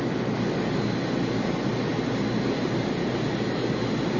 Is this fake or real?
real